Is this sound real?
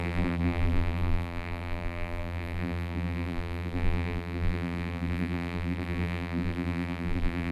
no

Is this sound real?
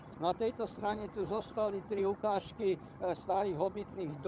no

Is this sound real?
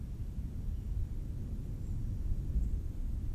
yes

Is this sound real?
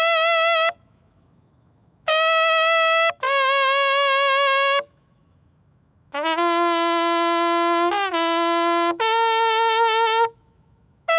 no